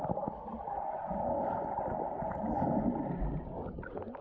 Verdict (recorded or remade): recorded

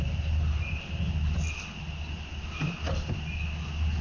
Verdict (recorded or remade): recorded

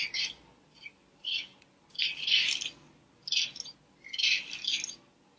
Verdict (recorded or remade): recorded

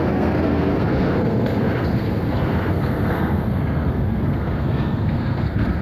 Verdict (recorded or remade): remade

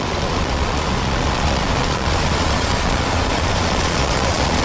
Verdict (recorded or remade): remade